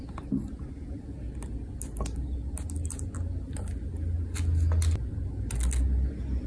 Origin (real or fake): real